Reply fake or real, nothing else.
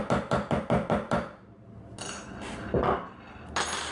real